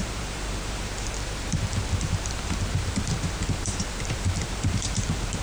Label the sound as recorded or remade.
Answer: remade